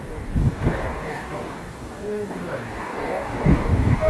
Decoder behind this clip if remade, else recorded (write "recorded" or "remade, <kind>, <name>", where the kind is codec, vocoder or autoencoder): remade, codec, DAC